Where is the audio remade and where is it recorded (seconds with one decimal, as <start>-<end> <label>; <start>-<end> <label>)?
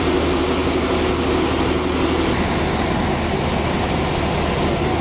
0.0-5.0 recorded